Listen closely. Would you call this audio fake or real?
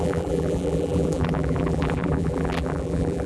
fake